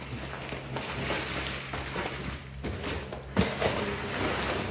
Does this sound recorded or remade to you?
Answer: recorded